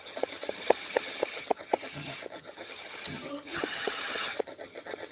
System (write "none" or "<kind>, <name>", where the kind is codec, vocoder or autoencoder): vocoder, HiFi-GAN